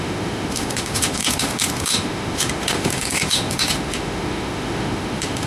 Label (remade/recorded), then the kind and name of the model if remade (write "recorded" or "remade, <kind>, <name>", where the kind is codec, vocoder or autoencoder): remade, autoencoder, DAC-VAE